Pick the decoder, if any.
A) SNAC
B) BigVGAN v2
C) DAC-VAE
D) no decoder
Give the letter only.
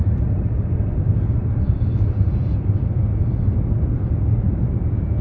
B